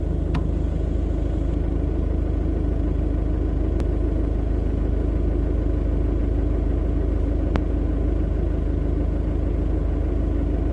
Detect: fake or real real